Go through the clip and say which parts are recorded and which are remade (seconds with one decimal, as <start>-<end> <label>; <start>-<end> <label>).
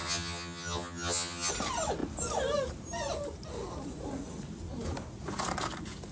0.0-1.5 remade; 1.5-6.1 recorded